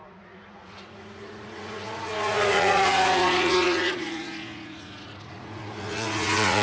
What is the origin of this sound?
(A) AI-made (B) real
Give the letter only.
A